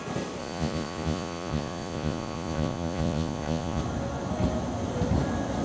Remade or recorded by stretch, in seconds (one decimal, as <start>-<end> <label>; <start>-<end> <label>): 0.0-0.4 recorded; 0.4-3.8 remade; 3.8-5.6 recorded